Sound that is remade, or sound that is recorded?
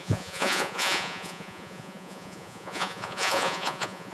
remade